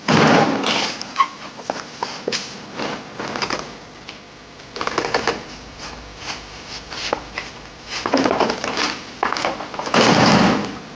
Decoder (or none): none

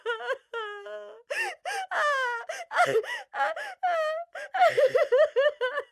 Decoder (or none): none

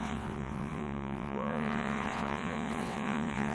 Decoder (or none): vocoder, WaveNeXt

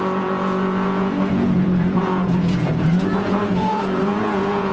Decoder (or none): vocoder, Vocos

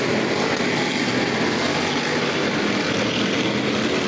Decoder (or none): none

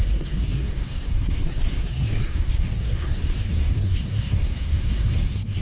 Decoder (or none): codec, SNAC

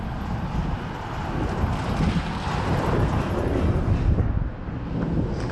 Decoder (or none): none